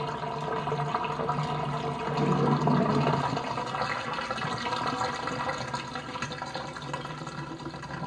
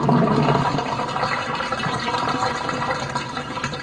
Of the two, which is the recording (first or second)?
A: first